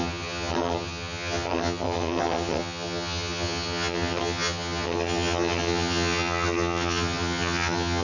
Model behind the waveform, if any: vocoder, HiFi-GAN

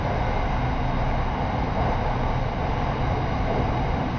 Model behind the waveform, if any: none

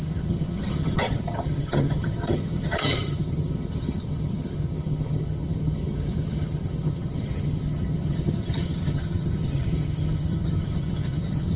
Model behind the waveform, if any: vocoder, HiFi-GAN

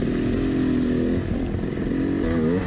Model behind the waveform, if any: none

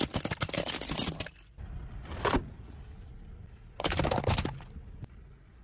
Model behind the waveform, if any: none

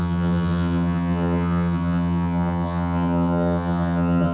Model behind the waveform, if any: vocoder, HiFi-GAN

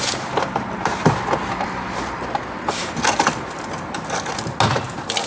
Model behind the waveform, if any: none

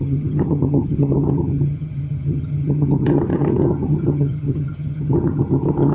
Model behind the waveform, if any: vocoder, HiFi-GAN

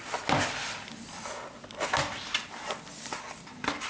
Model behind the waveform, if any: none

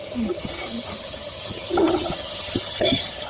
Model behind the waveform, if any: vocoder, HiFi-GAN